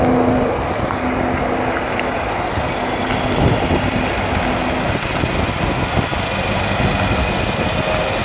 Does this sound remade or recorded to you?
recorded